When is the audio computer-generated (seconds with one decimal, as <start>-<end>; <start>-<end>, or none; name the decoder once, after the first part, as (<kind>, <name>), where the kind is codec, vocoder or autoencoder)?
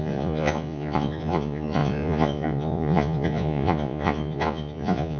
0.0-5.2 (vocoder, Vocos)